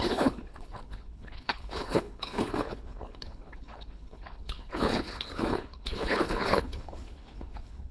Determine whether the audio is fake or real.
fake